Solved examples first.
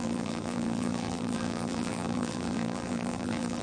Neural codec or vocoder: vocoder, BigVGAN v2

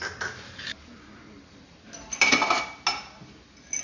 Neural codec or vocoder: none